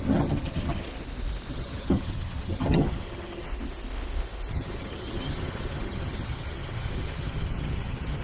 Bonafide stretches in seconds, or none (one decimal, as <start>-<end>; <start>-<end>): 0.9-1.5; 3.5-4.5